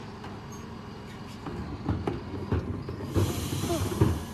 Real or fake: real